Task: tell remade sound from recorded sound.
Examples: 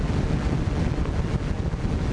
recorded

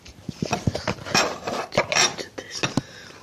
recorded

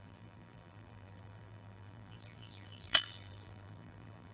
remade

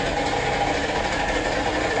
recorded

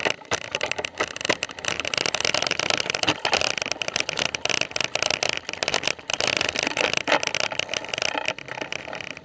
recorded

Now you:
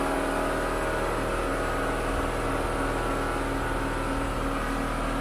recorded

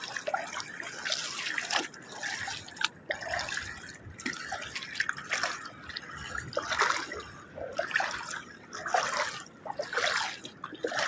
recorded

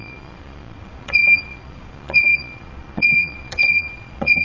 remade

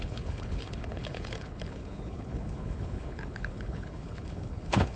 remade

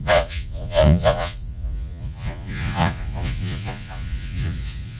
remade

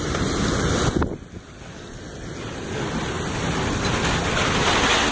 recorded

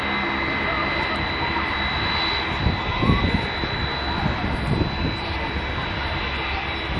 recorded